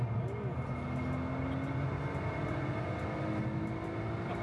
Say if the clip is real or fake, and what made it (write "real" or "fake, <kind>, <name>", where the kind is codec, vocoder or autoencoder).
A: real